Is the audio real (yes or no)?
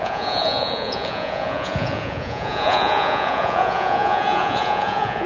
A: no